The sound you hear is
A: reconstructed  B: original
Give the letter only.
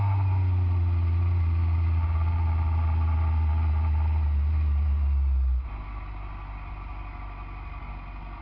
B